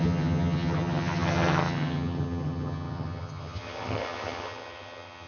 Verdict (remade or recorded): remade